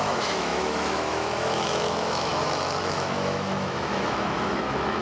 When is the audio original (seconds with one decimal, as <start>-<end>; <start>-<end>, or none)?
none